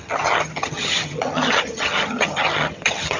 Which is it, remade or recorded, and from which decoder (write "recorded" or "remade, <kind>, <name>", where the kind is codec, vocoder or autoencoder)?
remade, vocoder, HiFi-GAN